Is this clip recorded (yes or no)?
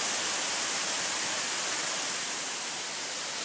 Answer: yes